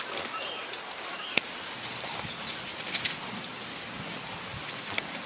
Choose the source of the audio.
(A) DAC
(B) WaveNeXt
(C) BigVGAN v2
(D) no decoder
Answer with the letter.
D